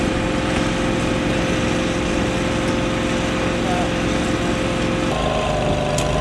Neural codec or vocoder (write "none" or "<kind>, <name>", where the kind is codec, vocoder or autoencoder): none